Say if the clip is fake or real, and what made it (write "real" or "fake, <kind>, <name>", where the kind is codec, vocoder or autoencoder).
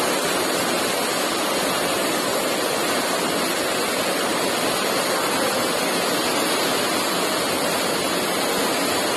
real